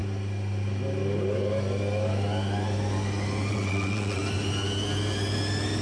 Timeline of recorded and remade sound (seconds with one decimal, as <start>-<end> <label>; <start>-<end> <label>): 0.0-3.5 recorded; 3.5-4.2 remade; 4.2-5.8 recorded